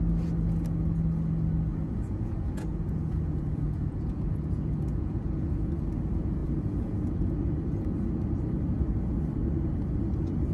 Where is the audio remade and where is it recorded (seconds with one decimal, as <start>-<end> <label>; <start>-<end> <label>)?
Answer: 0.0-1.7 recorded; 1.7-5.7 remade; 5.7-6.4 recorded; 6.4-7.1 remade; 7.1-10.5 recorded